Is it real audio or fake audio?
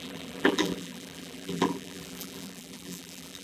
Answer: fake